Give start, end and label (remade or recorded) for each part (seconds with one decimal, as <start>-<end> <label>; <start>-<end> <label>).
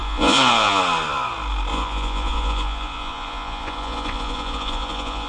0.0-0.8 remade; 0.8-1.7 recorded; 1.7-5.3 remade